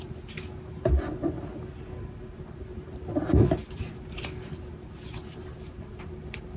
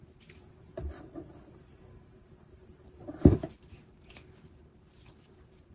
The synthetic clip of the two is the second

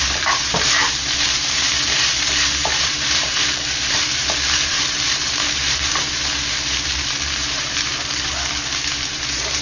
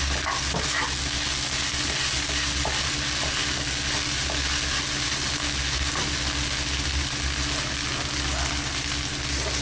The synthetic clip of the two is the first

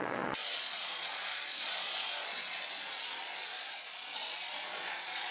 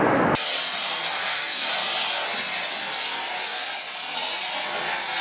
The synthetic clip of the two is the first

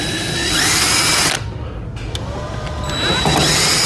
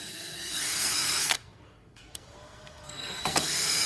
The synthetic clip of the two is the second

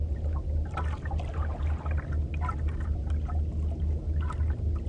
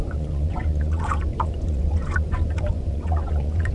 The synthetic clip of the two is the second